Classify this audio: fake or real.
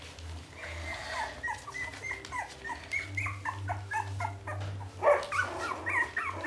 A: real